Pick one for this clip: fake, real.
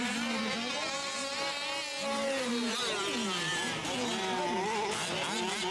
real